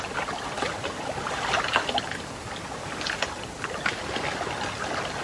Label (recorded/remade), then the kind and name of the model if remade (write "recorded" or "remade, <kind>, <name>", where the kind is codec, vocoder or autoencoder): recorded